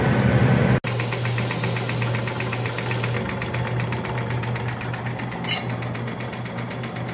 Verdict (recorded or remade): recorded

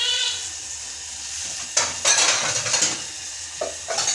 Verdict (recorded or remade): recorded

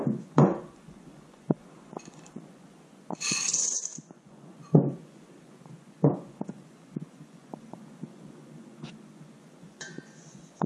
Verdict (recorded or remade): remade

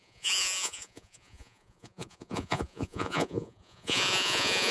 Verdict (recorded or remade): remade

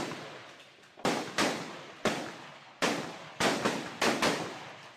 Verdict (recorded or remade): recorded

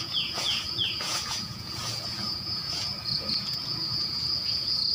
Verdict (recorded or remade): remade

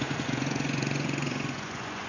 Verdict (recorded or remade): remade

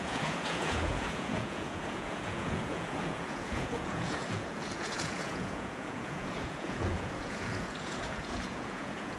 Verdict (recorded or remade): remade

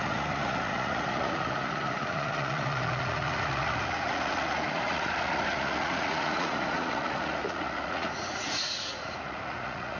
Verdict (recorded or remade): remade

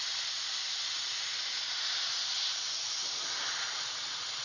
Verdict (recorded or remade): recorded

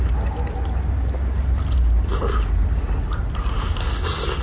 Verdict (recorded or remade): recorded